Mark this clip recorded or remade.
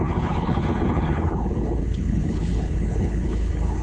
remade